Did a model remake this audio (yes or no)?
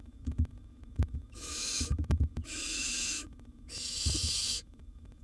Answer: yes